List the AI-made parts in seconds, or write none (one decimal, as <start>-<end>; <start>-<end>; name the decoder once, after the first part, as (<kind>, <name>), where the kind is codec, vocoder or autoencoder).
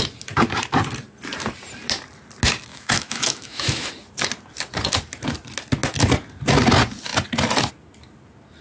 2.7-3.9 (autoencoder, DAC-VAE)